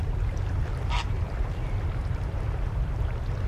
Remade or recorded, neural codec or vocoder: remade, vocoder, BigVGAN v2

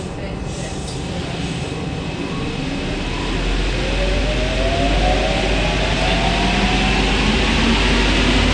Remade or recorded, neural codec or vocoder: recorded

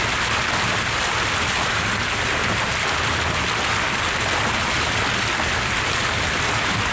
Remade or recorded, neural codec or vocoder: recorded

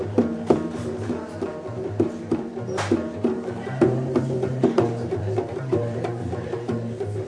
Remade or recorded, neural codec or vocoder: remade, vocoder, BigVGAN v2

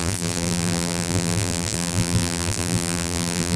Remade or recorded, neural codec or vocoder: remade, vocoder, BigVGAN v2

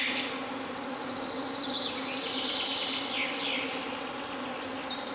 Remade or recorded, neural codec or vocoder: recorded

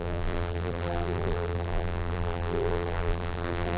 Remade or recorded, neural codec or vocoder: remade, vocoder, BigVGAN v2